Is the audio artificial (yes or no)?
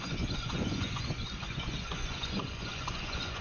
yes